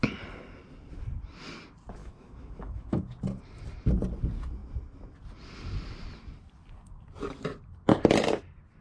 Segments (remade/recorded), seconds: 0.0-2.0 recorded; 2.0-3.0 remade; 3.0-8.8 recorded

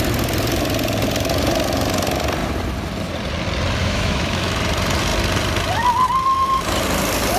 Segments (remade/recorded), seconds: 0.0-3.8 recorded; 3.8-4.5 remade; 4.5-7.4 recorded

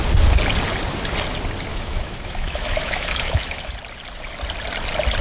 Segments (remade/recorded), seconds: 0.0-1.7 recorded; 1.7-3.7 remade; 3.7-5.2 recorded

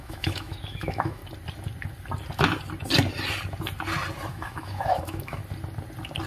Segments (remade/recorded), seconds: 0.0-1.2 remade; 1.2-4.3 recorded; 4.3-5.4 remade; 5.4-6.3 recorded

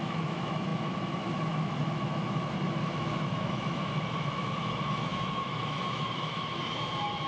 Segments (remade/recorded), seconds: 0.0-7.3 remade

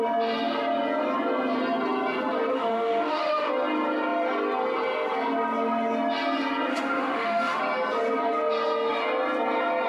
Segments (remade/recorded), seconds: 0.0-2.5 recorded; 2.5-3.5 remade; 3.5-6.7 recorded; 6.7-7.6 remade; 7.6-9.9 recorded